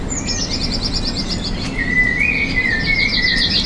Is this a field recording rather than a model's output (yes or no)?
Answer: yes